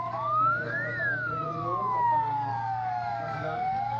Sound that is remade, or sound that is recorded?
remade